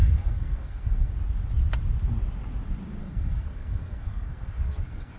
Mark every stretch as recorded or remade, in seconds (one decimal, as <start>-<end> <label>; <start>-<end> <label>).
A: 0.0-1.1 remade; 1.1-3.0 recorded; 3.0-5.2 remade